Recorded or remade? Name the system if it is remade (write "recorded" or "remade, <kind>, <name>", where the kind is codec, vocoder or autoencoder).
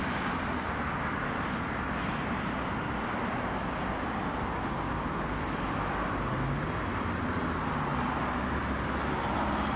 recorded